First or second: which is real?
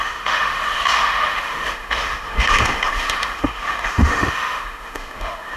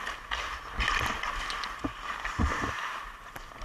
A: second